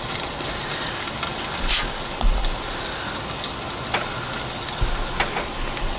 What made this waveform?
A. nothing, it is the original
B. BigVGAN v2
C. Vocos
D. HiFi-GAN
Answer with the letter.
A